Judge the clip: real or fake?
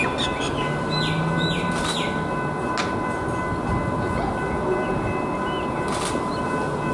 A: real